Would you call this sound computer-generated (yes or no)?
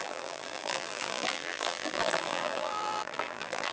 yes